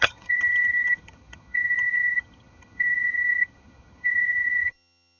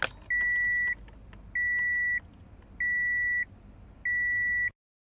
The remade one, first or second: first